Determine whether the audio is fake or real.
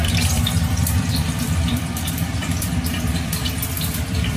fake